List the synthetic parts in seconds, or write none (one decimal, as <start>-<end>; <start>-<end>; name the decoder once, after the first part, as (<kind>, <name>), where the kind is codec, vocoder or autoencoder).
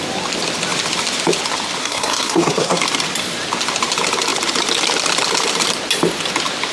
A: 1.8-2.8 (codec, SNAC)